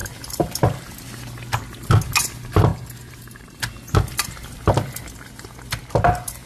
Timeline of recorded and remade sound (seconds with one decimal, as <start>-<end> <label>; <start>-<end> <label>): 0.0-0.6 remade; 0.6-2.7 recorded; 2.7-3.6 remade; 3.6-6.5 recorded